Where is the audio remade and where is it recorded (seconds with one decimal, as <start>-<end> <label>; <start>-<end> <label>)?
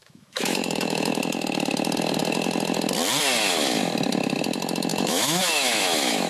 0.0-1.1 remade; 1.1-4.9 recorded; 4.9-6.3 remade